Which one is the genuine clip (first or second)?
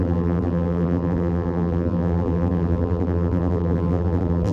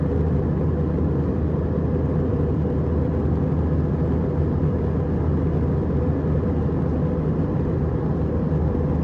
second